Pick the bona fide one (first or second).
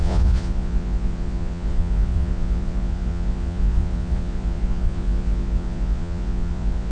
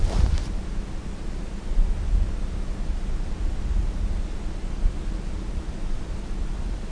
second